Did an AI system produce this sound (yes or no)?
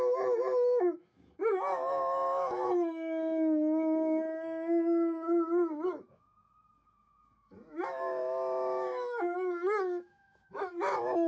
yes